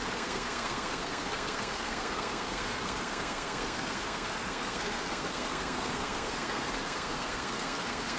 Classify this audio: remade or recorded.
remade